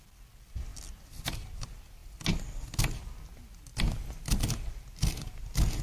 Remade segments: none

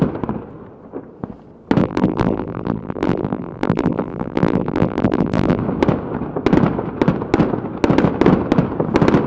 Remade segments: 1.8-5.6 (vocoder, BigVGAN v2)